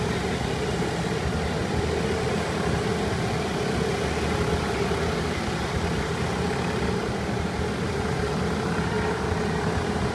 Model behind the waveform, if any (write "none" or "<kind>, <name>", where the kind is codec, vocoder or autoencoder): none